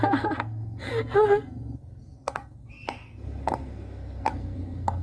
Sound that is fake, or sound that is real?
fake